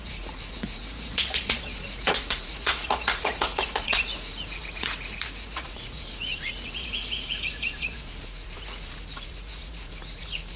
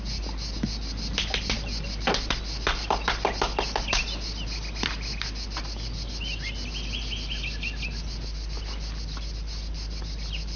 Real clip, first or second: second